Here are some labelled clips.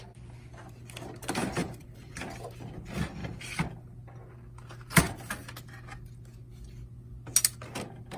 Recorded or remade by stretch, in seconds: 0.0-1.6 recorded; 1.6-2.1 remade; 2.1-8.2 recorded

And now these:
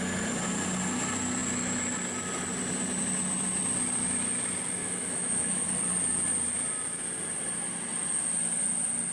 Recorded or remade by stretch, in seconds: 0.0-4.8 recorded; 4.8-5.7 remade; 5.7-9.1 recorded

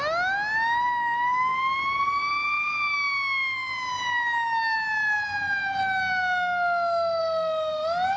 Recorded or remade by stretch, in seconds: 0.0-8.2 recorded

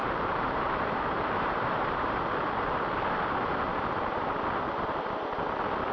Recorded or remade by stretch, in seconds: 0.0-2.2 remade; 2.2-3.7 recorded; 3.7-4.4 remade; 4.4-5.9 recorded